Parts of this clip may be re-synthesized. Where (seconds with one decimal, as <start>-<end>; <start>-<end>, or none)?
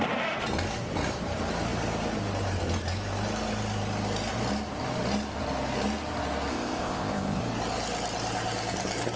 6.5-7.4